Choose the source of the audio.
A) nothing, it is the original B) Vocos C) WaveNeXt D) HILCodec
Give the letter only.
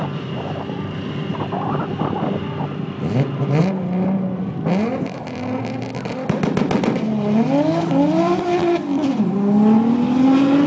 A